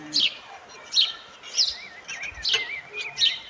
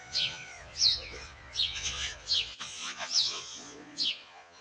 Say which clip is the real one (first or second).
first